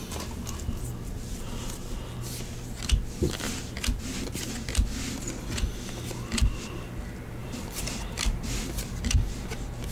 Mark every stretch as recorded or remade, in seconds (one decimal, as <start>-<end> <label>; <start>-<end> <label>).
0.0-7.4 recorded; 7.4-9.0 remade; 9.0-9.9 recorded